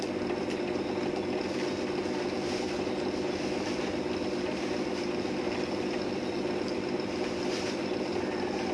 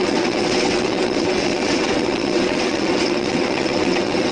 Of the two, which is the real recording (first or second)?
first